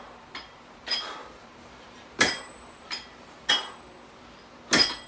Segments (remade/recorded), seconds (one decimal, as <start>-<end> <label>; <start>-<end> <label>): 0.0-1.2 recorded; 1.2-3.5 remade; 3.5-5.1 recorded